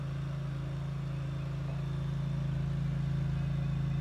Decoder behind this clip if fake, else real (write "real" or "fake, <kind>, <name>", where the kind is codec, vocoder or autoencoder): real